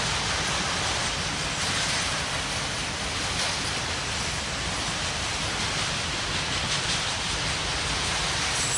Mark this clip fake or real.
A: real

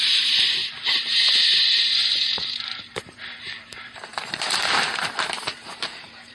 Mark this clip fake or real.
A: fake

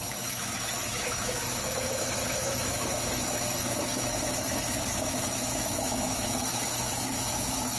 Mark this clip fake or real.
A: fake